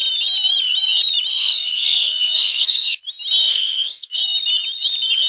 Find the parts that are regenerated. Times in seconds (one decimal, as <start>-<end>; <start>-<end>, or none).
1.3-3.0; 3.5-4.2